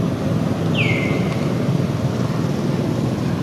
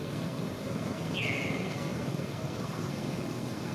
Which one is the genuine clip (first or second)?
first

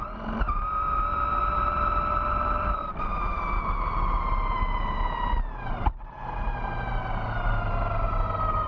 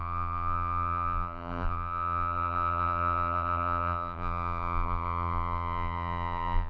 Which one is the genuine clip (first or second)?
first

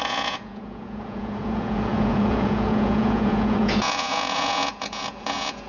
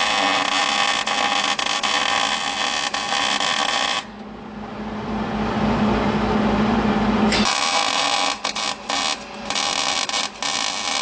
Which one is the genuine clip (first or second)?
second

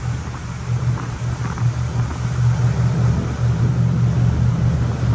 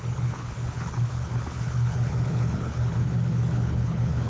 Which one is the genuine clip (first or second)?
first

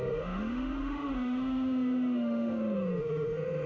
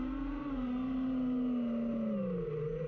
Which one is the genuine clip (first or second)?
second